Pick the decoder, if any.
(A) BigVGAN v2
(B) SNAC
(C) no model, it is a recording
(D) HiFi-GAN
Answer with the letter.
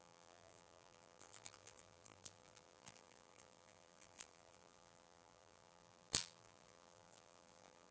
A